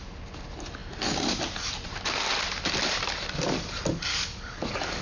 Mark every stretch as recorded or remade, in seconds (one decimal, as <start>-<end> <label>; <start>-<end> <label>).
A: 0.0-4.1 recorded; 4.1-5.0 remade